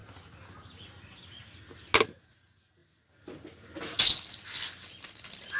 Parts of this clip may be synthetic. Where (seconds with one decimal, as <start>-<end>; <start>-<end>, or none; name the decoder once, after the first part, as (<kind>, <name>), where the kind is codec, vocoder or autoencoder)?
2.8-3.7 (vocoder, BigVGAN v2)